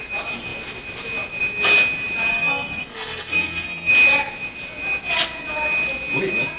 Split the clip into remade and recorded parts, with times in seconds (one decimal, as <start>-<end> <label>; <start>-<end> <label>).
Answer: 0.0-2.3 recorded; 2.3-3.9 remade; 3.9-6.6 recorded